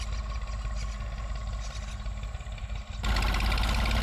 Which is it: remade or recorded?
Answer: recorded